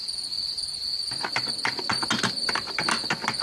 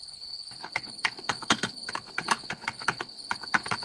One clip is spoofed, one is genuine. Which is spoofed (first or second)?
second